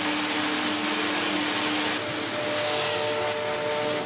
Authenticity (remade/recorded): recorded